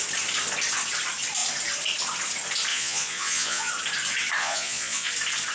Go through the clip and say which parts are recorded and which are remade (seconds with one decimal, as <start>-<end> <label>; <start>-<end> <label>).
0.0-2.7 recorded; 2.7-3.7 remade; 3.7-4.4 recorded; 4.4-5.1 remade; 5.1-5.5 recorded

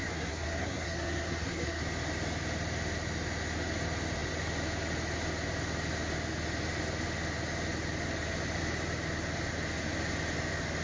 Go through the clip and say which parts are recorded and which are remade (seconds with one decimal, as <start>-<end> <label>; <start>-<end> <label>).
0.0-1.8 remade; 1.8-10.8 recorded

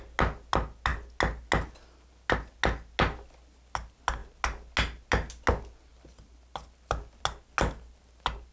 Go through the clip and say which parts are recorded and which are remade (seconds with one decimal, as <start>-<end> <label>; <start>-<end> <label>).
0.0-8.5 recorded

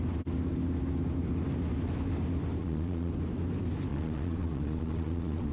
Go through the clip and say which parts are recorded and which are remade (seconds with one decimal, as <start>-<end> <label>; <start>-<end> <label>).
0.0-2.6 recorded; 2.6-3.1 remade; 3.1-3.9 recorded; 3.9-5.5 remade